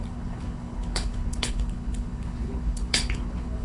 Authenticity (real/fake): fake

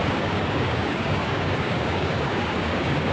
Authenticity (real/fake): fake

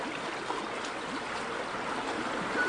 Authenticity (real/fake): real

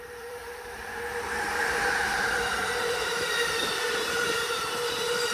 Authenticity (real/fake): fake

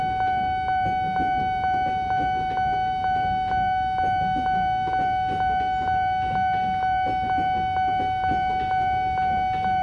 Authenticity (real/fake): real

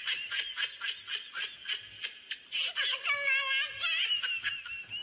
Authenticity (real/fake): real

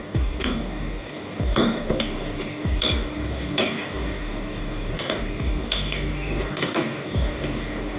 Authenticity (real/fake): fake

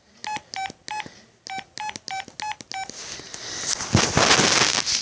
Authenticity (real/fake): real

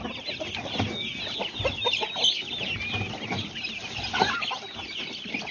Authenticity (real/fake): real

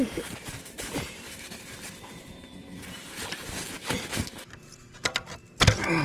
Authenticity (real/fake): real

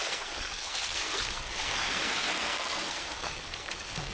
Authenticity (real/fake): fake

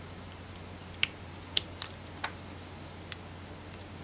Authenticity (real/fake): real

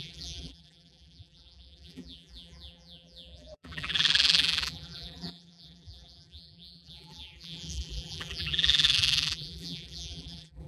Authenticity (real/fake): fake